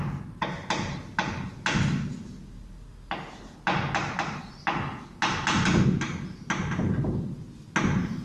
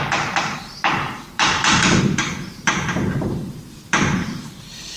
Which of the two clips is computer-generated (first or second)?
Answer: second